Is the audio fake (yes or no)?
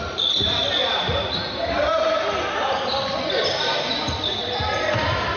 no